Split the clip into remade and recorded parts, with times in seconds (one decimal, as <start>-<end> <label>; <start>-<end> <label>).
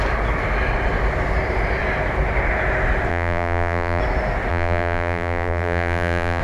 0.0-3.1 recorded; 3.1-4.0 remade; 4.0-4.5 recorded; 4.5-6.4 remade